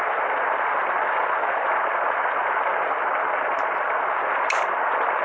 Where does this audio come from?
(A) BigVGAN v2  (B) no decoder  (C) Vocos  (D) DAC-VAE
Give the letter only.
B